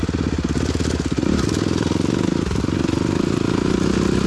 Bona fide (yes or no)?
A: yes